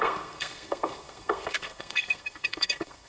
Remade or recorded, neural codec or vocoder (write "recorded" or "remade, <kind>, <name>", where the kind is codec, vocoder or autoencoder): remade, codec, SNAC